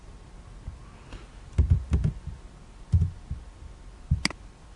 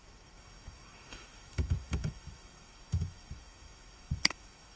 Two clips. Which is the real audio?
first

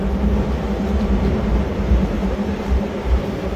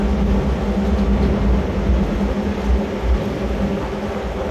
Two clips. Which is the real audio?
second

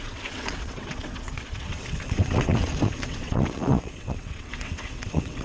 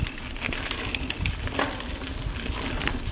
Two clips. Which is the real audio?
second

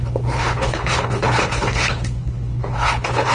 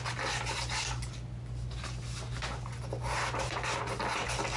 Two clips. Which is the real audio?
second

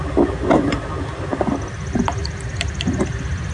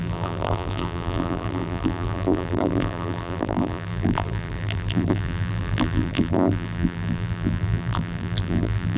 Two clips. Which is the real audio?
first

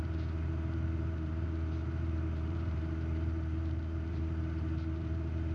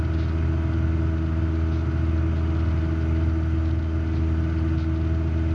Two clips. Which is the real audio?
second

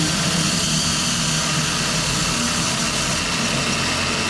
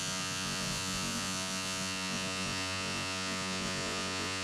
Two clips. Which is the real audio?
first